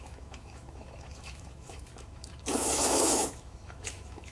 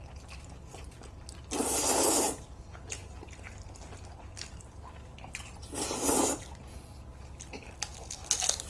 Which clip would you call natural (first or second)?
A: second